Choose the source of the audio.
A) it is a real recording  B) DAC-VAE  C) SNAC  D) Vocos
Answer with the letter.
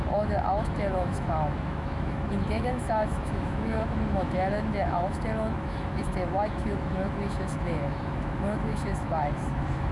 B